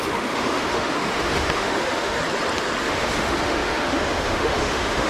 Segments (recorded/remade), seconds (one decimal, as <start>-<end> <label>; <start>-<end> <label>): 0.0-2.2 remade; 2.2-2.8 recorded; 2.8-5.1 remade